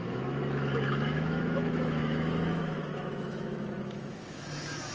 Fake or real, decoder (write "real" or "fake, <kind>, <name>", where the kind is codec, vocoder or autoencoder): fake, autoencoder, DAC-VAE